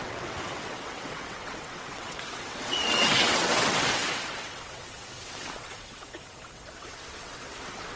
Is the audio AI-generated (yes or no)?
yes